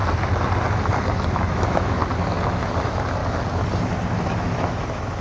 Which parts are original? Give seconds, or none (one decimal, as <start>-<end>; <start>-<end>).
0.0-1.3; 2.0-2.5; 3.2-4.2